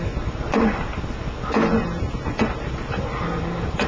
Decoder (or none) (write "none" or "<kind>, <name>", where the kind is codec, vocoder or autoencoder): none